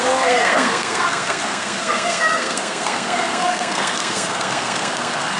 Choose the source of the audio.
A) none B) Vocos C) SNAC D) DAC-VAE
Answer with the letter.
C